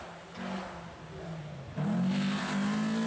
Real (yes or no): yes